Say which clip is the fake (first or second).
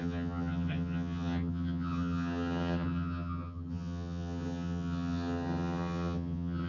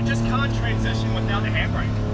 first